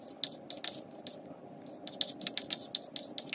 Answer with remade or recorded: recorded